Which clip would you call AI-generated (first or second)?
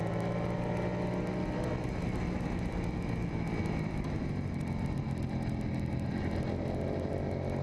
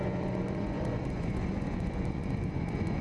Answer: second